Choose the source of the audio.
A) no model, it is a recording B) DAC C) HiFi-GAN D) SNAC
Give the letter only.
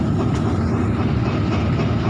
A